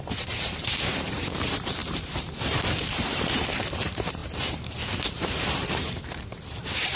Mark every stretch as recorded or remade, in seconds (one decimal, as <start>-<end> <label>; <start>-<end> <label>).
0.0-7.0 remade